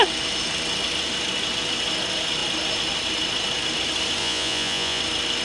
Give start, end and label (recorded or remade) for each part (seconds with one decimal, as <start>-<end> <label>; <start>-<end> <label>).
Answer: 0.0-4.2 recorded; 4.2-5.0 remade; 5.0-5.4 recorded